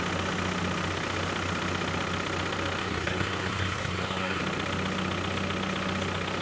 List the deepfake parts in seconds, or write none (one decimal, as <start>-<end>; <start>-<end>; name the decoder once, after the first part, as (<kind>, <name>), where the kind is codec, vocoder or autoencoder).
2.8-4.4 (codec, SNAC)

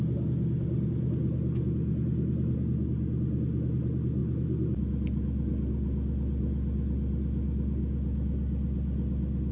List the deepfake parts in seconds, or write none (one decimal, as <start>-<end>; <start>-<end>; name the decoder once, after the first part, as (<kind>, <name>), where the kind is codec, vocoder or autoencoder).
none

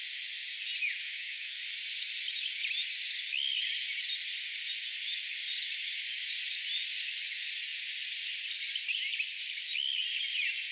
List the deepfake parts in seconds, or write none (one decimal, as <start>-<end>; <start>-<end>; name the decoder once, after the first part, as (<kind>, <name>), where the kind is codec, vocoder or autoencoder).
1.0-1.6 (codec, SNAC)